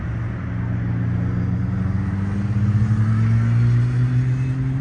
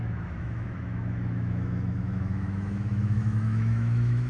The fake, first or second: second